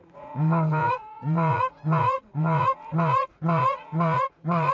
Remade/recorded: remade